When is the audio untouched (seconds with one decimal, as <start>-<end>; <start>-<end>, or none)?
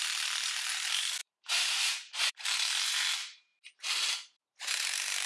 none